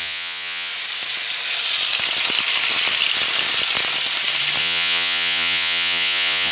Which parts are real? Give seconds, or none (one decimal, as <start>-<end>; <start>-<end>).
0.7-4.6